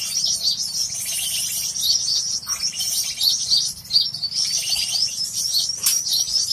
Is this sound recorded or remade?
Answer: remade